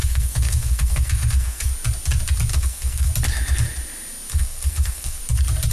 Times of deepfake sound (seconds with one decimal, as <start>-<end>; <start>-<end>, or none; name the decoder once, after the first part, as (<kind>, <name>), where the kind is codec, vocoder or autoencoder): 0.0-1.7 (codec, SNAC); 2.5-3.1; 4.3-5.2